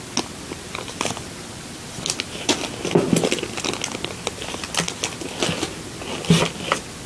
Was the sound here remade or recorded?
recorded